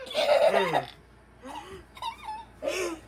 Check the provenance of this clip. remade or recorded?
recorded